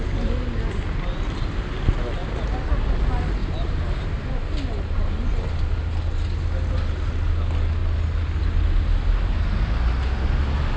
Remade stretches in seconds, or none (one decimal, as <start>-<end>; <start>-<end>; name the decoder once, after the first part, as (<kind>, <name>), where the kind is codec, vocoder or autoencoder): none